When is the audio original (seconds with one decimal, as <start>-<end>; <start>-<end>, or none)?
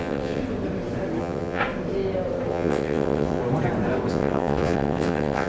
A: 0.4-1.2; 1.6-2.5; 3.4-4.1